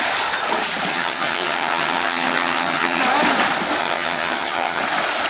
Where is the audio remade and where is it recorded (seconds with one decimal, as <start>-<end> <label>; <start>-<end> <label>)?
0.0-0.9 recorded; 0.9-3.0 remade; 3.0-3.8 recorded; 3.8-4.8 remade; 4.8-5.3 recorded